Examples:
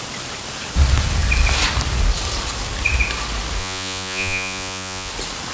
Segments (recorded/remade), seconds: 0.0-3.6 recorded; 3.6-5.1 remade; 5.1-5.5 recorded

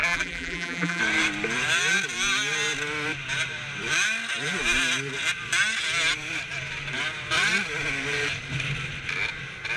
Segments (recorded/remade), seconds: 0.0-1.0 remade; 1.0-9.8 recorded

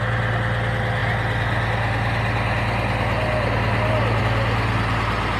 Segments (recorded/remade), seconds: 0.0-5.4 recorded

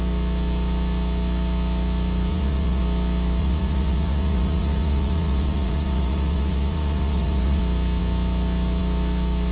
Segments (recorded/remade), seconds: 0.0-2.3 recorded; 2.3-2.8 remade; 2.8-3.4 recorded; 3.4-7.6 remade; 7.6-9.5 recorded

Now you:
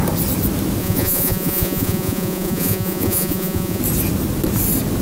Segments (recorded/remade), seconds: 0.0-0.8 recorded; 0.8-3.8 remade; 3.8-5.0 recorded

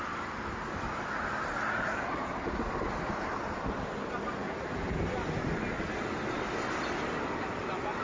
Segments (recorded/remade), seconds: 0.0-4.4 recorded; 4.4-5.0 remade; 5.0-8.0 recorded

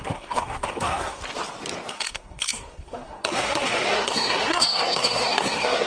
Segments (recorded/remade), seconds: 0.0-1.2 remade; 1.2-1.9 recorded; 1.9-5.9 remade

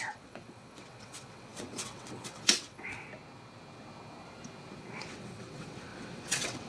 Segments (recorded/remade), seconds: 0.0-3.1 remade; 3.1-4.8 recorded; 4.8-6.7 remade